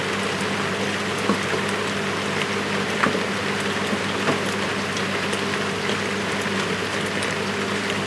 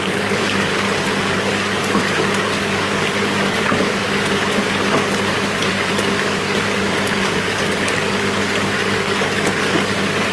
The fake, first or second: second